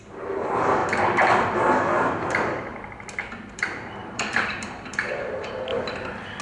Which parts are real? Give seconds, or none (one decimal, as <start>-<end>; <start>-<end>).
0.8-2.3; 2.7-3.5; 5.7-6.4